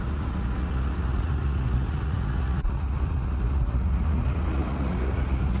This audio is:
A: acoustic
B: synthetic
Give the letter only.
B